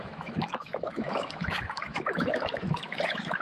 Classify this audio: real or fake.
fake